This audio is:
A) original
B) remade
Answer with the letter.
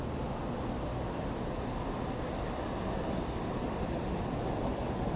A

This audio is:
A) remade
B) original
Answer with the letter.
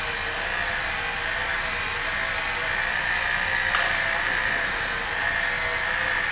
B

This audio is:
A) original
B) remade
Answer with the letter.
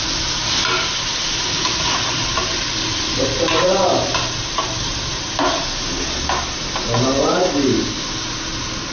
A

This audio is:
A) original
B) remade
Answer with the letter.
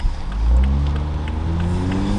A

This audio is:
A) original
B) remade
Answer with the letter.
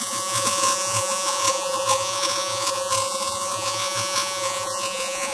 B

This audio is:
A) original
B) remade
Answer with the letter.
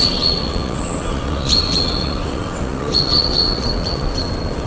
B